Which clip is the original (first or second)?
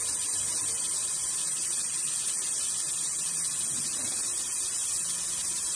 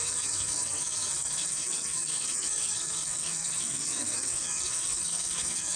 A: first